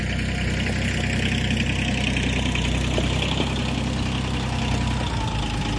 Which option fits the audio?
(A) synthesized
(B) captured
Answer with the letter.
B